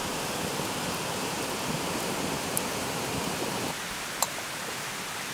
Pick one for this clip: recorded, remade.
recorded